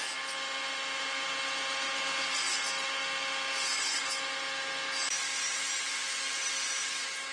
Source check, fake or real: real